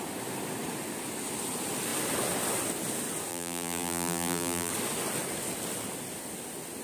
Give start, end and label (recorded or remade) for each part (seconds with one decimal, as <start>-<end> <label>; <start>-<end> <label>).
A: 0.0-3.3 recorded; 3.3-4.7 remade; 4.7-6.8 recorded